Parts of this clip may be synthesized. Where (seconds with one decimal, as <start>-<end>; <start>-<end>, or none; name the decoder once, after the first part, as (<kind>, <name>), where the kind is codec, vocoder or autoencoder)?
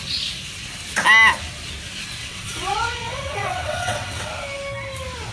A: 2.2-4.3 (vocoder, WaveNeXt)